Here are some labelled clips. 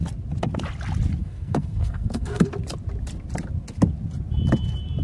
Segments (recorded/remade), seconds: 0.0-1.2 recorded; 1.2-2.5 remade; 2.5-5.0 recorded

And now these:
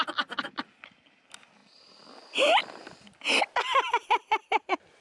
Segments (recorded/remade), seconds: 0.0-5.0 recorded

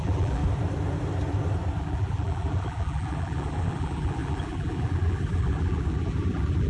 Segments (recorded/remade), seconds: 0.0-0.4 remade; 0.4-1.8 recorded; 1.8-6.7 remade